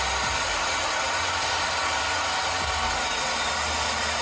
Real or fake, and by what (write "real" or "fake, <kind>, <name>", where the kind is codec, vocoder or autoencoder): real